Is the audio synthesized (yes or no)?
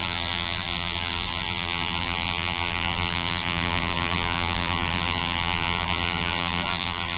yes